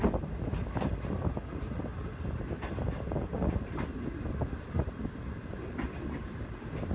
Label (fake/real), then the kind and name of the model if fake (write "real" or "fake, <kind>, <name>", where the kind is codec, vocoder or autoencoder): real